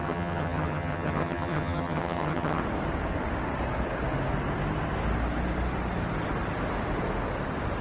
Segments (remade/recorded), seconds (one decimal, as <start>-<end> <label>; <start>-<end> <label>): 0.0-2.6 remade; 2.6-7.8 recorded